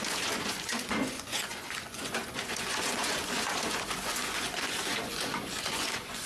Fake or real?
fake